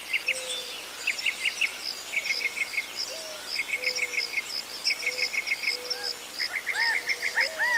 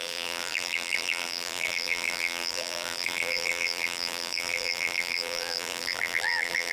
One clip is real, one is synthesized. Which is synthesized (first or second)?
second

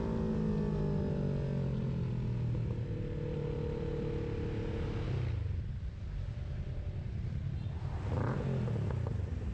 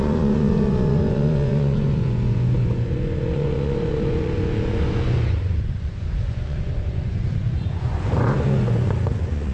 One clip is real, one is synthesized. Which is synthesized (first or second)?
second